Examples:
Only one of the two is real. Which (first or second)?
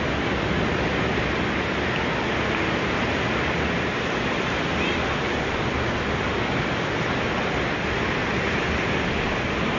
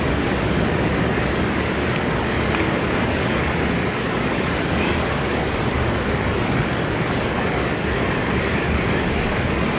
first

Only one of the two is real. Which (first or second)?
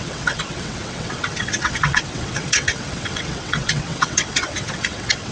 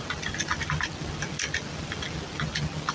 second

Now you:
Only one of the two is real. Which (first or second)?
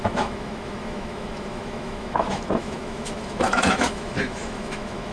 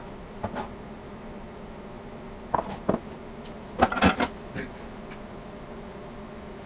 second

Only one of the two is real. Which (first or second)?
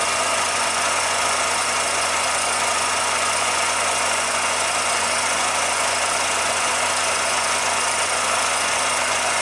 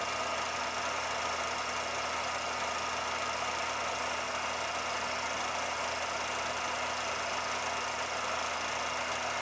second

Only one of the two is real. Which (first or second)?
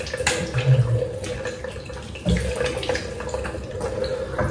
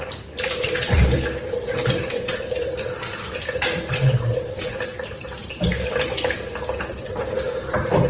first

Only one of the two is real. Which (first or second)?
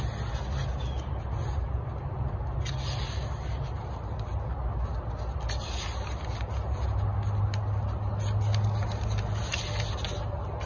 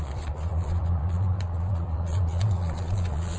first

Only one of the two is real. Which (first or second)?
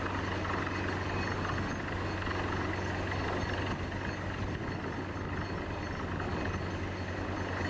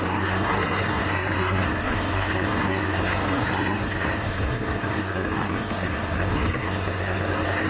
first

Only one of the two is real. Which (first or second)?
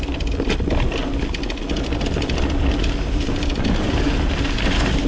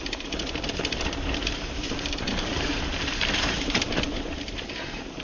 first